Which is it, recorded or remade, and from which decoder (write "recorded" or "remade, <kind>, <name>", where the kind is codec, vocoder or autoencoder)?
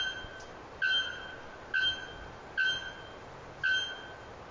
recorded